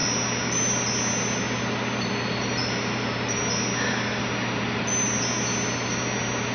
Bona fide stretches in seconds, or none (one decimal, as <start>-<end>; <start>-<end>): 0.0-6.5